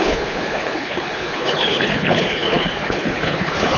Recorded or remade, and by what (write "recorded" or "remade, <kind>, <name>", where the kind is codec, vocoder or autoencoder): remade, codec, HILCodec